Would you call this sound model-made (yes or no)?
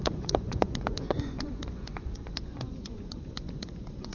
yes